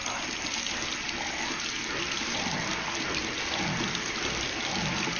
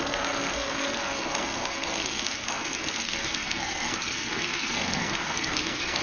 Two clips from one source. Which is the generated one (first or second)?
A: second